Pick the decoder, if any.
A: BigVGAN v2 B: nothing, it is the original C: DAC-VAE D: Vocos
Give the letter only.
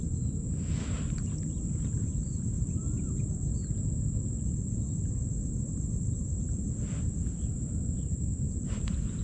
B